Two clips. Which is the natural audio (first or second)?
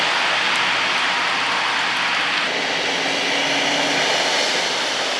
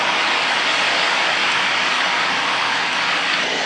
first